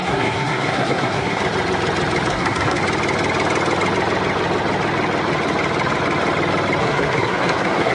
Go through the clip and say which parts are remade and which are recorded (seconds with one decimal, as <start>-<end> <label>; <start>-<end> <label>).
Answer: 0.0-1.4 remade; 1.4-2.3 recorded; 2.3-2.8 remade; 2.8-6.8 recorded; 6.8-7.9 remade